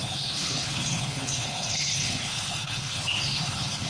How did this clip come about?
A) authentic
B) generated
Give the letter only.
B